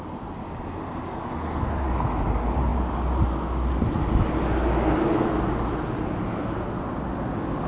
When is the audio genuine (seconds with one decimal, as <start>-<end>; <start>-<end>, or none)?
0.0-7.7